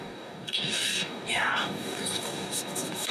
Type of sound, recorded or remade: remade